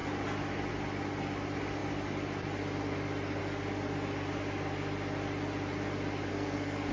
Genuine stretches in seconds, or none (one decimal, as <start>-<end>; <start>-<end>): 0.0-6.3